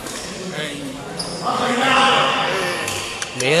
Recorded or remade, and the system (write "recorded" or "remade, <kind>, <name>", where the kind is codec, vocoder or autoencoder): remade, codec, DAC